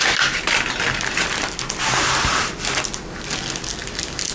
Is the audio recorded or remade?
recorded